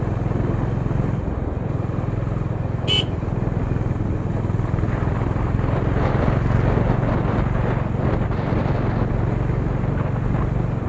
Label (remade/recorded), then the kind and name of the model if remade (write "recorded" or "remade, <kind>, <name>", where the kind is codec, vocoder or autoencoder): recorded